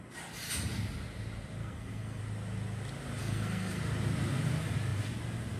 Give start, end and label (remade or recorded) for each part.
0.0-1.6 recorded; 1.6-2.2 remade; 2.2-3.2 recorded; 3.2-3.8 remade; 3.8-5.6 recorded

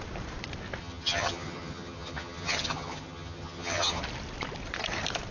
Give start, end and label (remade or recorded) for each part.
0.0-0.8 recorded; 0.8-4.0 remade; 4.0-5.3 recorded

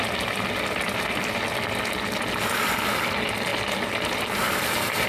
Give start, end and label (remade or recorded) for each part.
0.0-3.5 recorded; 3.5-5.1 remade